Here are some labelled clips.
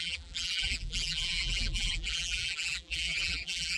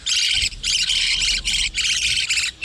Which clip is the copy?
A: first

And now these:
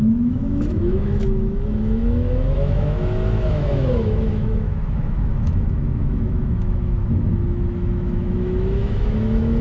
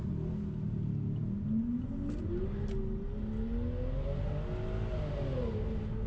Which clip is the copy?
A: first